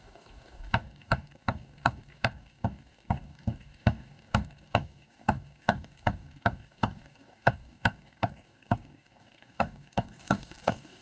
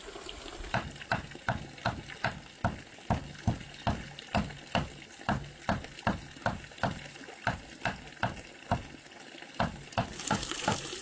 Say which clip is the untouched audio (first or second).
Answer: second